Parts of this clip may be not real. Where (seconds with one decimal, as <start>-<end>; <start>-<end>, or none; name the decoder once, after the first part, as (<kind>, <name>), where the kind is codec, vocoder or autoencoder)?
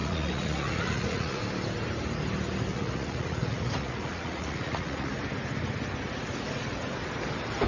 0.0-1.4 (vocoder, Vocos); 2.7-5.1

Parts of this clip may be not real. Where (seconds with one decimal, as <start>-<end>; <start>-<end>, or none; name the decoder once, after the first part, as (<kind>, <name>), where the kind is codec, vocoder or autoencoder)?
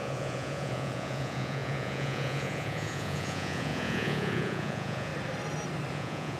0.0-5.1 (vocoder, Vocos); 5.9-6.4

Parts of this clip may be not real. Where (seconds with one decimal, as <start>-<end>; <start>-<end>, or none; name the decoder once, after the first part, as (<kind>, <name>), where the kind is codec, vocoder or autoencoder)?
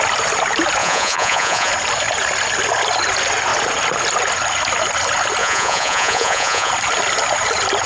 0.8-1.7 (vocoder, Vocos); 5.4-6.7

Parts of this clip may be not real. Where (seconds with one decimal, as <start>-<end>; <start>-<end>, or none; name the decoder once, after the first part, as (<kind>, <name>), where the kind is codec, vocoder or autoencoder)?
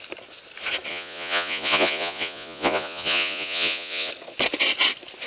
0.9-4.1 (vocoder, Vocos)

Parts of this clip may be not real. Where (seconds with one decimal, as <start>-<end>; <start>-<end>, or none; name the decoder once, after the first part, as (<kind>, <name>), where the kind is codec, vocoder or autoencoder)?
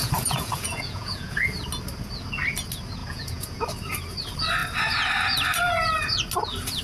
0.0-1.5 (vocoder, Vocos); 3.0-3.6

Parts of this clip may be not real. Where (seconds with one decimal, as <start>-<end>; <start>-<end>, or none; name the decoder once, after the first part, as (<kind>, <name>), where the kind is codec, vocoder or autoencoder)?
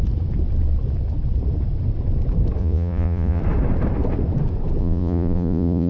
2.6-3.4 (vocoder, Vocos); 4.8-5.9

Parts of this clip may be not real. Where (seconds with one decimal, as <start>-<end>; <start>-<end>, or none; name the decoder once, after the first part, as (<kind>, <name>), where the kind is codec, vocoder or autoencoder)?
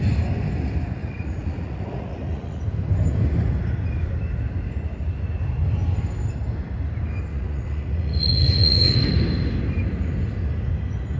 1.0-2.6 (vocoder, Vocos); 7.3-9.0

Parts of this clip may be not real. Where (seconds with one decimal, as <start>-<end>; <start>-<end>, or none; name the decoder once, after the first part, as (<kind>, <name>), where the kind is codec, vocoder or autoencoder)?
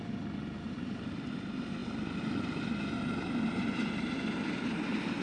none